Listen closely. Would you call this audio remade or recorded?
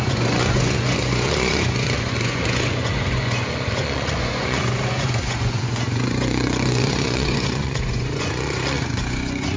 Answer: remade